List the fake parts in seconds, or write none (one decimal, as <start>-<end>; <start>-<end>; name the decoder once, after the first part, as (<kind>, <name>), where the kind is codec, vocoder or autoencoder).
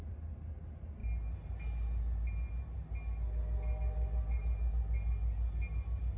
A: none